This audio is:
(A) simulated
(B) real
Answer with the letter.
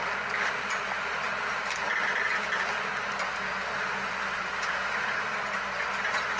B